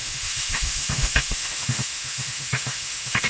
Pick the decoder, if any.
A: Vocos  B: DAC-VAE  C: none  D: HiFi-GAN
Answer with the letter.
B